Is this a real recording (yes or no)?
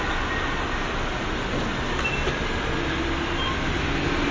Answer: yes